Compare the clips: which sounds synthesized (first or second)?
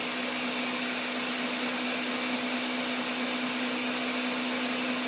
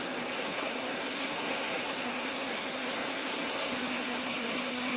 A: second